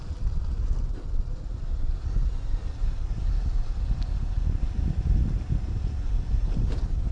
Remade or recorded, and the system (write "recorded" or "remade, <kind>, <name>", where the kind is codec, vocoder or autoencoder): recorded